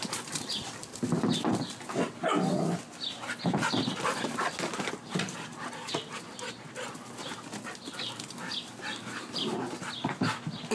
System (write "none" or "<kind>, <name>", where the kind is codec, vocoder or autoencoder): none